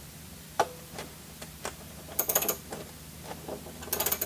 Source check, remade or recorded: recorded